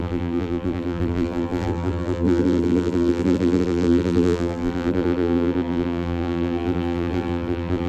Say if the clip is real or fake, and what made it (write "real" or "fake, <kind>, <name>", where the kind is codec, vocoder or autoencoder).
fake, vocoder, BigVGAN v2